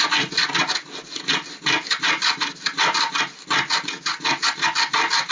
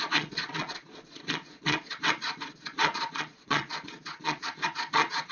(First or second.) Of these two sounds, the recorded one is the first